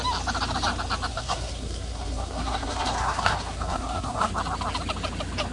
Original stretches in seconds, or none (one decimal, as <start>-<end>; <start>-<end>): 0.0-1.1; 4.3-5.5